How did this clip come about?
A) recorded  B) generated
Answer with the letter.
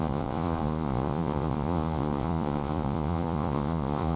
B